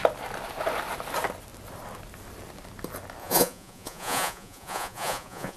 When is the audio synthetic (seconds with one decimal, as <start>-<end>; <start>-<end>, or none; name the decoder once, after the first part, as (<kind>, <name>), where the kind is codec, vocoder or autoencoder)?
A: 3.2-5.6 (vocoder, Vocos)